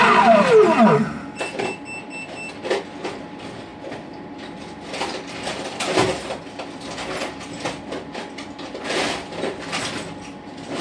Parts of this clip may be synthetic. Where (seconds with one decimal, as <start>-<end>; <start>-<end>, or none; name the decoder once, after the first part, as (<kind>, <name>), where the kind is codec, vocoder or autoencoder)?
none